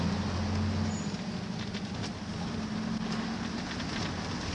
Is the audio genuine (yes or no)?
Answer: yes